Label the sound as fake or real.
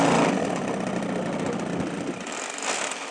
real